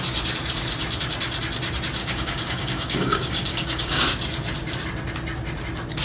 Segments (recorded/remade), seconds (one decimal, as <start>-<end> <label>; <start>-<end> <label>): 0.0-2.0 recorded; 2.0-4.0 remade; 4.0-6.0 recorded